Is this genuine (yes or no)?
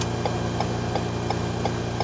yes